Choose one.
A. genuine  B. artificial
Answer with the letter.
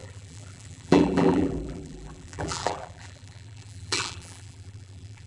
B